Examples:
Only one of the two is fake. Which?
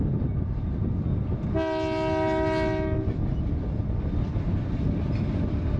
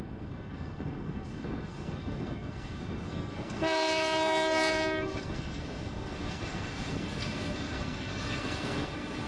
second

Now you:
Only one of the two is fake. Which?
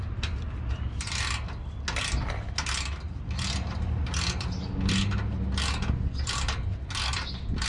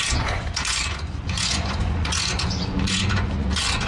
second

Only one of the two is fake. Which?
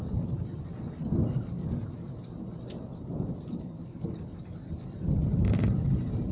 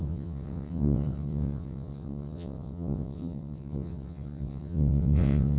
second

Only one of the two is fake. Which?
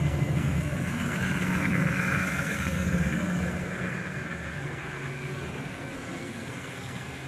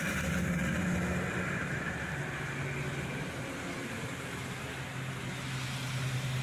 first